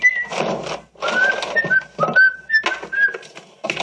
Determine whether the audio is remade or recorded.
recorded